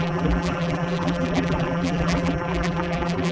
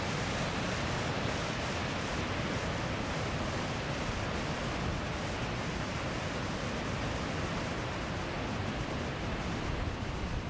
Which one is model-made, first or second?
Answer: first